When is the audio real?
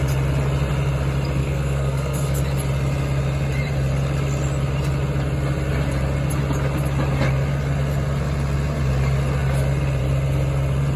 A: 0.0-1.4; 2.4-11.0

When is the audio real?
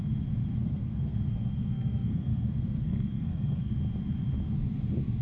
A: 0.0-0.6; 3.7-5.2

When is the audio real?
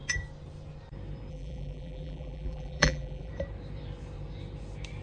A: 0.0-1.3; 3.3-5.0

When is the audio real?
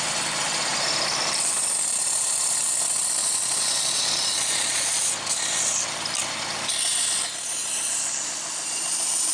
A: 0.0-3.2; 5.1-9.3